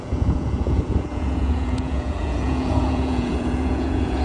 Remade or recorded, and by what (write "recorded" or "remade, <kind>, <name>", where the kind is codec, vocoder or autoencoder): remade, vocoder, Vocos